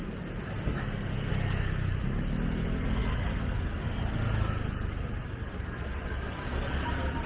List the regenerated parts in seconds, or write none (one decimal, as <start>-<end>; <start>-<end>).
none